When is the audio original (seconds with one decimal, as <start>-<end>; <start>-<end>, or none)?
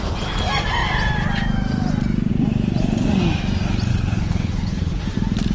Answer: 0.0-3.9; 5.0-5.5